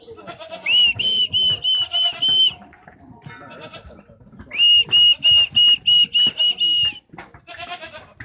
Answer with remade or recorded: recorded